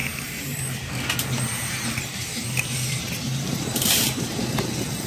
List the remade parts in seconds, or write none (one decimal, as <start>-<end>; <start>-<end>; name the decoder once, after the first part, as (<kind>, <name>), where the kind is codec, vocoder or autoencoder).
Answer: 0.0-0.9 (vocoder, BigVGAN v2); 1.5-4.6